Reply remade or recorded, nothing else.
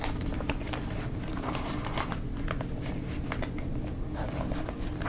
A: remade